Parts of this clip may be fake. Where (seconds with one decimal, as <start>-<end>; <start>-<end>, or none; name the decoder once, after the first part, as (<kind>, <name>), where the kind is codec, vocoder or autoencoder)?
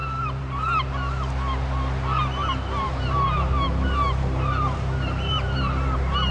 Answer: 0.0-0.9 (vocoder, BigVGAN v2); 2.4-6.3